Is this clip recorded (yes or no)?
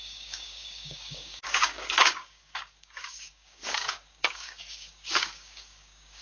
no